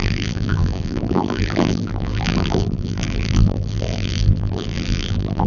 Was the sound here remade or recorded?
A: remade